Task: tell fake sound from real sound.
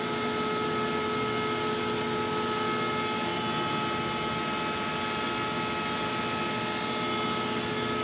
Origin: real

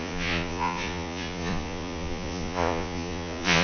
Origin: fake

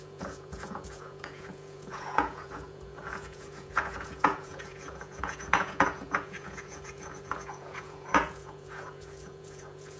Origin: fake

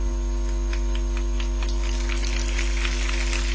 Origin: real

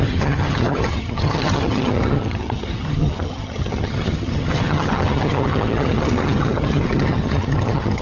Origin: fake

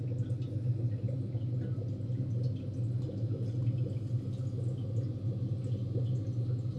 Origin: real